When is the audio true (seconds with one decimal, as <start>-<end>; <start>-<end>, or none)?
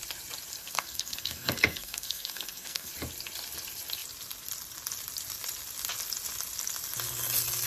0.0-0.6; 2.9-7.7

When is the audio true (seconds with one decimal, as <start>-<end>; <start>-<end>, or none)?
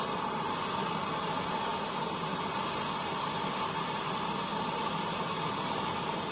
0.0-6.3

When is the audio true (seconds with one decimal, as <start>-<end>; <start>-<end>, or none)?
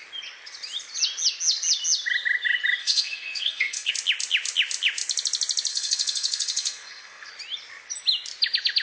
0.0-2.8; 3.9-5.7; 7.3-8.8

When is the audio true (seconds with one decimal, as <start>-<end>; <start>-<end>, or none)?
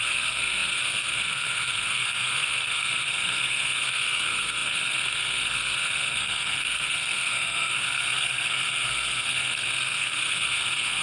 none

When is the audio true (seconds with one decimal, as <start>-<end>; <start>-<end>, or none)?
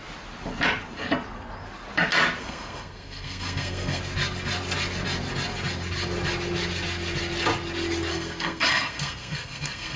0.0-2.4; 4.0-8.1